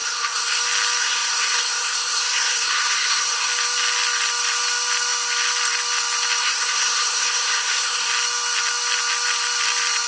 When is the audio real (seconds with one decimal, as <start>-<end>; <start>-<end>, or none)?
0.6-1.0; 3.5-6.4; 8.1-10.1

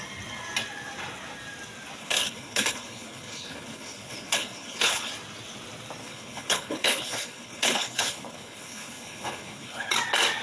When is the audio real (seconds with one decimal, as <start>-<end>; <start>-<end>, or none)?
0.0-2.0; 5.1-6.0; 9.9-10.4

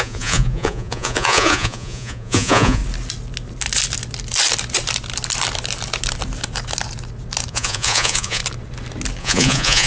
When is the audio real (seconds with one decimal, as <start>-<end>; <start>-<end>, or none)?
2.8-7.5; 8.4-9.2

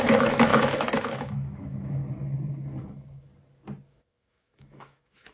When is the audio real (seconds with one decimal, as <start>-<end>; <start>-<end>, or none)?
2.0-2.9; 3.3-3.9

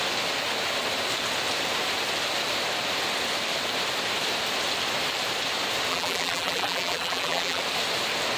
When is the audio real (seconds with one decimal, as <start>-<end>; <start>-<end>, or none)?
0.0-5.9; 7.6-8.4

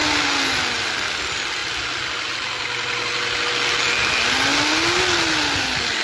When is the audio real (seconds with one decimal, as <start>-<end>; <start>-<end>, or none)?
0.0-6.0

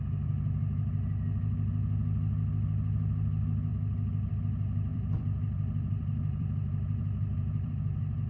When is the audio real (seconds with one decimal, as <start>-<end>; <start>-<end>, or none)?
0.0-3.7; 4.3-4.9; 7.7-8.3